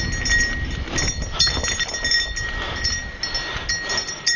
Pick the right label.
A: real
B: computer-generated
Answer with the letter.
A